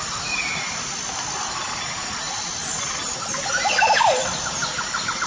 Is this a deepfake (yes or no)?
no